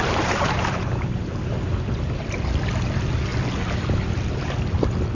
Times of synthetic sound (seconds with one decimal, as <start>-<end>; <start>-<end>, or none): 0.0-5.1